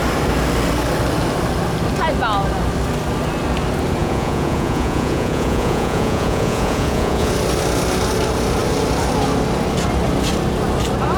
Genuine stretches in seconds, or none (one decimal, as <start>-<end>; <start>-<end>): 0.0-4.0; 7.3-11.2